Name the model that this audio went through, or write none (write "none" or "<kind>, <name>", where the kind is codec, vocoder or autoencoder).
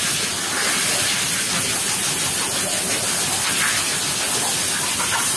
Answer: none